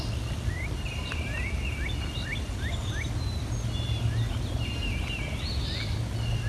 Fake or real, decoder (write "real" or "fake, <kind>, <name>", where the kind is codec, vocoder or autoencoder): real